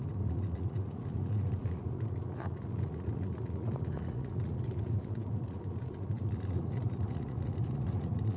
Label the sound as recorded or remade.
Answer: remade